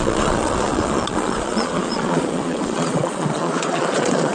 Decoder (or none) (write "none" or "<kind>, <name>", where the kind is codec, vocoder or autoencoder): vocoder, Vocos